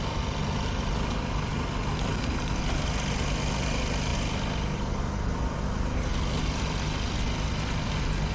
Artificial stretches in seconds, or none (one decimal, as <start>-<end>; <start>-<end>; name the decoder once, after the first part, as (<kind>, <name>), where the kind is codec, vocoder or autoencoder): none